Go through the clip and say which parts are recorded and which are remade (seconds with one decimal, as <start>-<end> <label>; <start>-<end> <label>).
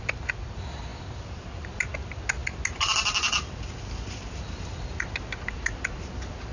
0.0-6.5 recorded